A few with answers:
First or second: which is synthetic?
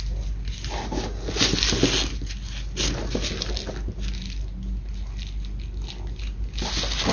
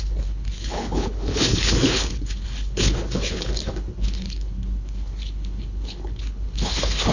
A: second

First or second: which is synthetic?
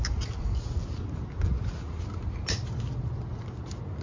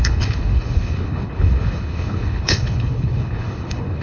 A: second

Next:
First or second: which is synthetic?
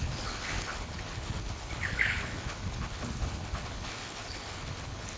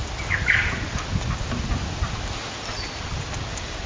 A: first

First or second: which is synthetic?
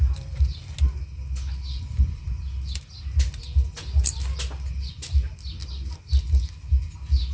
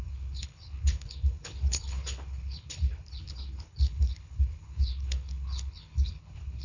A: second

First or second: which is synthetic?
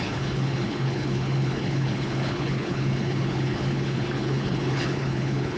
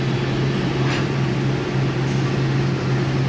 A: first